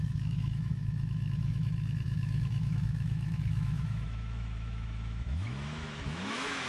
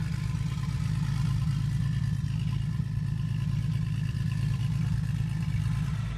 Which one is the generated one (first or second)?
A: first